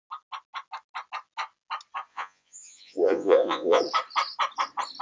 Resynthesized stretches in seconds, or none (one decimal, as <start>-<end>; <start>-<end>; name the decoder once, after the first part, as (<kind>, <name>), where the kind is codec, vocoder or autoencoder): 2.1-3.8 (vocoder, Vocos)